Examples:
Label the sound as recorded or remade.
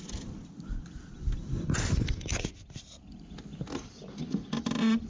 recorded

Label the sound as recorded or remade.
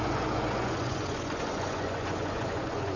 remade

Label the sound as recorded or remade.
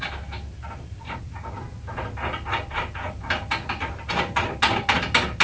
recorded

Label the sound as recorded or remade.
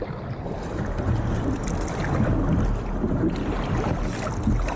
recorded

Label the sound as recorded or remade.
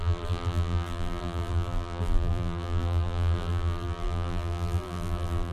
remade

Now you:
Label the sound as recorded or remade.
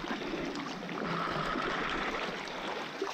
recorded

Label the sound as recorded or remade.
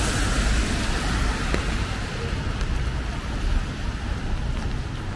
recorded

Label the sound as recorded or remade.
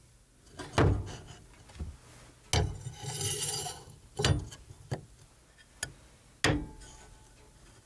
recorded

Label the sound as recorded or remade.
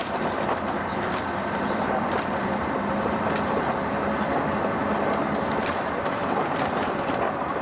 remade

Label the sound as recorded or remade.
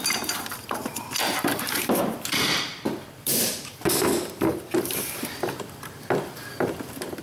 remade